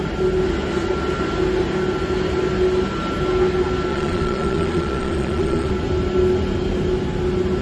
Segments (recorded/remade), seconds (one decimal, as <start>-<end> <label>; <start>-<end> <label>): 0.0-3.9 recorded; 3.9-5.7 remade; 5.7-7.6 recorded

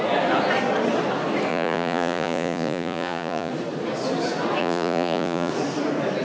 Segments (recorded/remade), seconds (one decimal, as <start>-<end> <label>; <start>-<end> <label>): 0.0-1.5 recorded; 1.5-3.5 remade; 3.5-4.6 recorded; 4.6-5.5 remade; 5.5-6.2 recorded

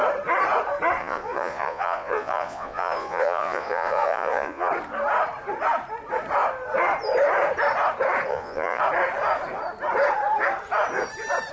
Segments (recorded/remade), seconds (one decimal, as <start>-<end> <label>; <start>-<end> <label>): 0.0-1.0 recorded; 1.0-4.7 remade; 4.7-8.3 recorded; 8.3-8.8 remade; 8.8-11.5 recorded

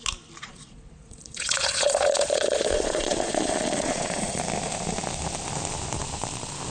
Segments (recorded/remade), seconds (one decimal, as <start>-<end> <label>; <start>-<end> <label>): 0.0-0.4 recorded; 0.4-4.4 remade; 4.4-6.7 recorded

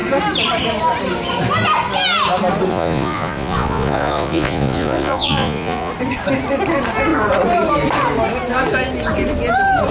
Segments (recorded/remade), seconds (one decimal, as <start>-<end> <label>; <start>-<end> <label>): 0.0-2.7 recorded; 2.7-5.9 remade; 5.9-9.9 recorded

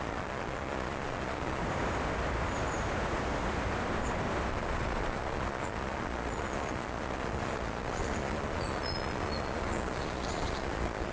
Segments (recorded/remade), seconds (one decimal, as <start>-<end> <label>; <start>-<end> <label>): 0.0-1.6 remade; 1.6-4.5 recorded; 4.5-11.1 remade

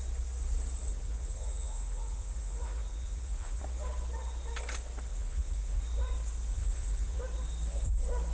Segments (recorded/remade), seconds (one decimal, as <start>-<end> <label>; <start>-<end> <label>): 0.0-0.9 recorded; 0.9-3.6 remade; 3.6-5.1 recorded; 5.1-5.8 remade; 5.8-6.5 recorded; 6.5-7.2 remade; 7.2-8.3 recorded